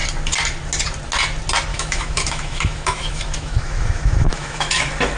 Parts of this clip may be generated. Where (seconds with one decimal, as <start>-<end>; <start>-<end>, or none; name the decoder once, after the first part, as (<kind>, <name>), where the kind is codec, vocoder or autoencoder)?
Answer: 1.7-4.8 (autoencoder, DAC-VAE)